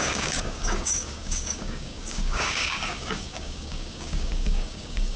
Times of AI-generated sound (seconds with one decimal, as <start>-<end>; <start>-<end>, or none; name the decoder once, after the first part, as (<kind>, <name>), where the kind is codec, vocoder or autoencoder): 0.0-5.2 (codec, DAC)